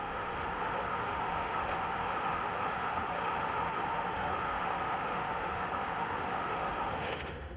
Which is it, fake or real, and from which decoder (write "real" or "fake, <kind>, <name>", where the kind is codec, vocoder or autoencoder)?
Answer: fake, autoencoder, DAC-VAE